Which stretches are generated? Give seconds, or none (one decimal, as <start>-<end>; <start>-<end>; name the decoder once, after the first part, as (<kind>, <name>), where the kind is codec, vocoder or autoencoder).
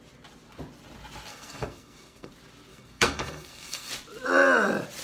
1.3-2.3 (codec, SNAC); 2.7-3.9